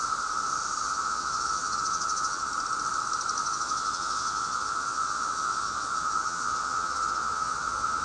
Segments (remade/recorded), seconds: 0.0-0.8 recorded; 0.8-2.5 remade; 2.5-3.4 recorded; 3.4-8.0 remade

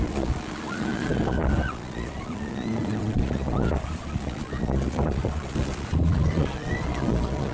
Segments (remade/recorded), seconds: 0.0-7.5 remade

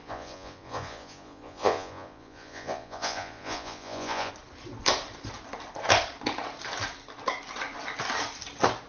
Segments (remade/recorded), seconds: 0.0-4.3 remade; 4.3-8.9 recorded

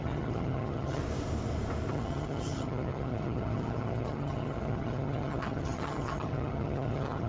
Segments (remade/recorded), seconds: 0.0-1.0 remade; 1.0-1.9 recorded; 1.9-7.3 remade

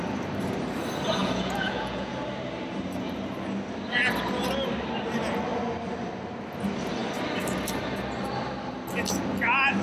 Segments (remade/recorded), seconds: 0.0-1.2 recorded; 1.2-2.1 remade; 2.1-9.8 recorded

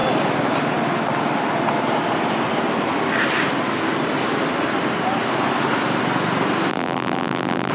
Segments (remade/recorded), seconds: 0.0-6.7 recorded; 6.7-7.7 remade